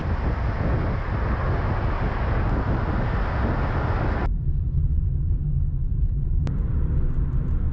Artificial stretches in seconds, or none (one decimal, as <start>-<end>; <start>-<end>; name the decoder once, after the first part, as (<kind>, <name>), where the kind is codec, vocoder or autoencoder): 4.2-5.5 (vocoder, BigVGAN v2); 5.9-6.5